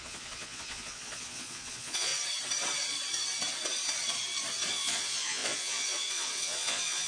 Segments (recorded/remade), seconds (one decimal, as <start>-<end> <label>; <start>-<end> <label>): 0.0-2.1 remade; 2.1-4.7 recorded; 4.7-7.1 remade